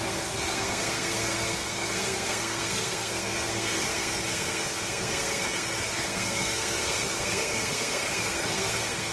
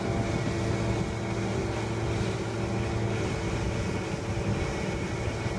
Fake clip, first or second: first